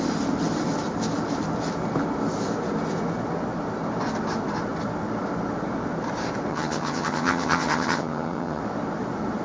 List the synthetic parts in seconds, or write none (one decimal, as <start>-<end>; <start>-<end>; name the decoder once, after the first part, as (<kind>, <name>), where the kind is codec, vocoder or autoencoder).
6.5-8.6 (vocoder, HiFi-GAN)